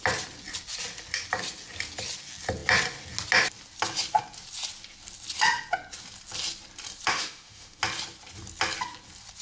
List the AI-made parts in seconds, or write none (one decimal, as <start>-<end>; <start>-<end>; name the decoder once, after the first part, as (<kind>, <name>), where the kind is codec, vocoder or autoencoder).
7.1-7.8 (autoencoder, DAC-VAE)